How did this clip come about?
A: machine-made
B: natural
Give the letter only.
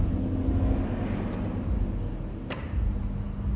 B